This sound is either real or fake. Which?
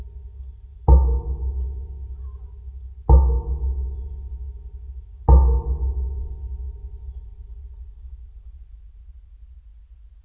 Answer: real